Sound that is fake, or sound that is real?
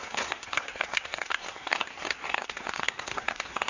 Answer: fake